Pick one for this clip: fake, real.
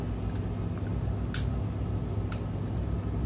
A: real